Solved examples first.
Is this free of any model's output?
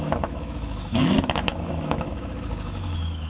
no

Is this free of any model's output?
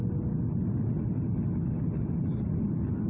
yes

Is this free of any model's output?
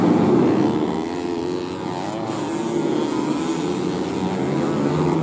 yes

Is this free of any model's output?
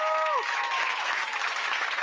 no